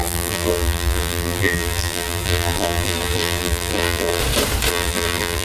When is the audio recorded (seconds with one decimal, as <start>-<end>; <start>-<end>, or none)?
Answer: 4.2-4.7